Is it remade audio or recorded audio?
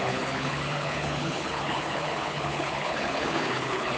remade